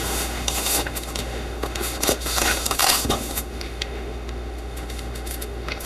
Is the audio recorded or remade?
remade